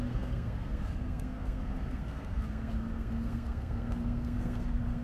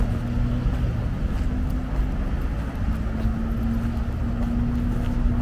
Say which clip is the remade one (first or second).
first